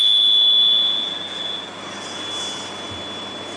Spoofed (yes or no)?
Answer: no